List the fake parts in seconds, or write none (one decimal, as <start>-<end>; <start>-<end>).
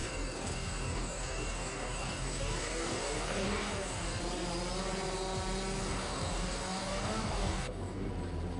0.0-4.2; 5.8-8.1